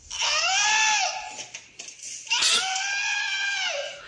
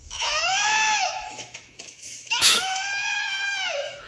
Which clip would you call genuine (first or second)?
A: first